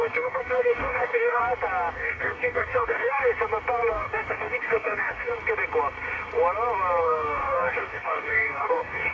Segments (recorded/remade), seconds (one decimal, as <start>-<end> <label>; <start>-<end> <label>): 0.0-1.4 remade; 1.4-1.9 recorded; 1.9-3.2 remade; 3.2-3.9 recorded; 3.9-5.3 remade; 5.3-7.0 recorded; 7.0-9.1 remade